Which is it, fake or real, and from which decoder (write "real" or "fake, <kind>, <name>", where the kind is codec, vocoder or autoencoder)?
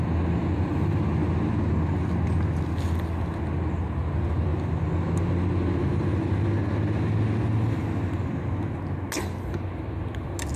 real